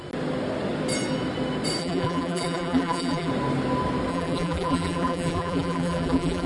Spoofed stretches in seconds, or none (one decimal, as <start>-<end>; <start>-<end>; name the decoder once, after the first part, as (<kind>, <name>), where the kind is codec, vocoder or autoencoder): 1.8-3.3 (vocoder, BigVGAN v2); 4.1-6.5